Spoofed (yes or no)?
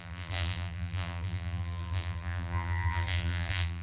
yes